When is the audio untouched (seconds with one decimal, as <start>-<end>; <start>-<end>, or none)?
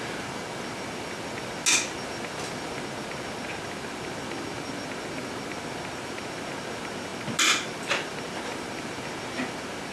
0.0-9.9